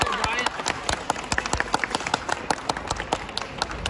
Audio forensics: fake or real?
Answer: real